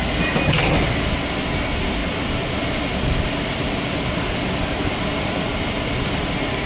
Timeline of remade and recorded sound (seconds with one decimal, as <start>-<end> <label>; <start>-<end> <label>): 0.0-6.7 recorded

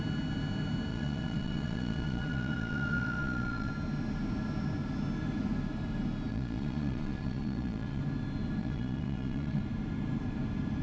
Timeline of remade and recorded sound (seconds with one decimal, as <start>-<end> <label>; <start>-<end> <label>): 0.0-0.9 recorded; 0.9-3.7 remade; 3.7-6.3 recorded; 6.3-8.0 remade; 8.0-8.6 recorded; 8.6-9.6 remade; 9.6-10.8 recorded

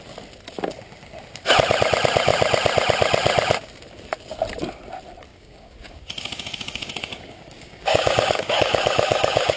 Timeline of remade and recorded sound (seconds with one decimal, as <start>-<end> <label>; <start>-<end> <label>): 0.0-5.3 recorded; 5.3-9.6 remade

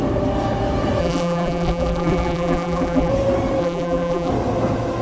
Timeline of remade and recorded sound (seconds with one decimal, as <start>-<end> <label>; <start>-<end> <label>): 0.0-1.0 recorded; 1.0-3.1 remade; 3.1-3.6 recorded; 3.6-4.3 remade; 4.3-5.0 recorded

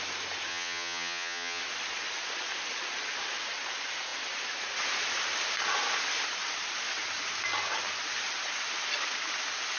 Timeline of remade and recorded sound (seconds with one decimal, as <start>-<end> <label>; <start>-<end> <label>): 0.0-0.5 recorded; 0.5-1.6 remade; 1.6-9.8 recorded

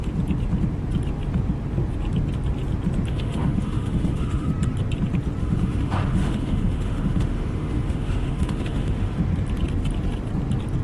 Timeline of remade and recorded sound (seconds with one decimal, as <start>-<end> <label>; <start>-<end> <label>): 0.0-3.1 recorded; 3.1-4.5 remade; 4.5-5.4 recorded; 5.4-9.2 remade; 9.2-10.8 recorded

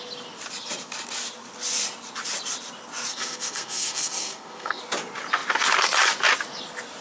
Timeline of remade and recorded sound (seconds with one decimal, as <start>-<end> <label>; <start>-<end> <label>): 0.0-3.1 recorded; 3.1-4.8 remade; 4.8-7.0 recorded

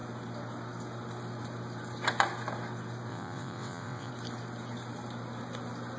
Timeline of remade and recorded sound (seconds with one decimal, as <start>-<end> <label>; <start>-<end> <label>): 0.0-3.1 recorded; 3.1-4.1 remade; 4.1-6.0 recorded